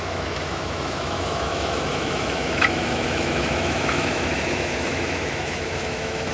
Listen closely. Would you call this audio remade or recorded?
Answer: remade